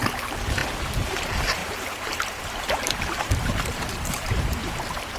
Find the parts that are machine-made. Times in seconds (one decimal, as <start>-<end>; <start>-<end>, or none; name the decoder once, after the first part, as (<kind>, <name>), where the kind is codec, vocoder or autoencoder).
1.6-4.7 (vocoder, BigVGAN v2)